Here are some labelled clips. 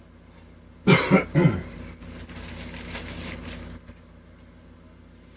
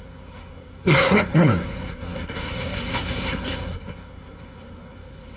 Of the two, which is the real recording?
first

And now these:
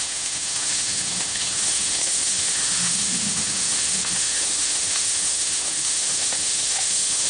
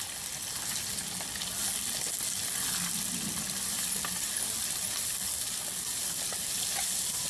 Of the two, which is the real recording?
second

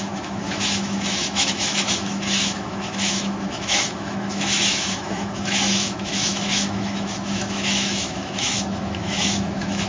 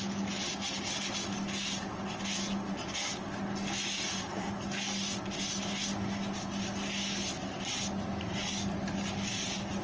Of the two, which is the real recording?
second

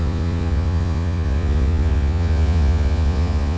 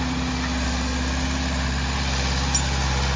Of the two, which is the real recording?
second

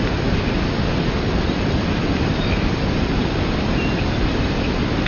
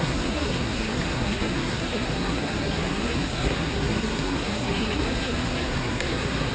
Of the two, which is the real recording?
first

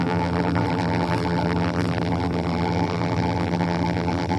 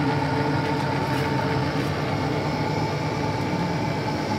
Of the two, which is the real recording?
second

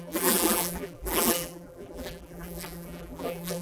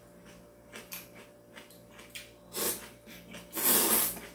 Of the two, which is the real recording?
second